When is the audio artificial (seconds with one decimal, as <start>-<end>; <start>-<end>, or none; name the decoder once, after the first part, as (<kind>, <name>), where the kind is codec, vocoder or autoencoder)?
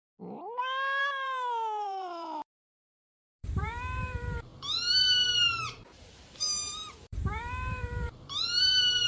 1.0-9.1 (vocoder, BigVGAN v2)